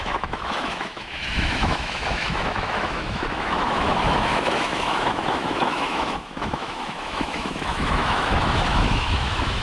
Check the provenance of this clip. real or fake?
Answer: fake